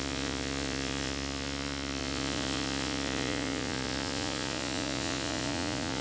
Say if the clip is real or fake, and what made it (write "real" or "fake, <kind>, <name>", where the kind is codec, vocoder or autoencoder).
fake, vocoder, Vocos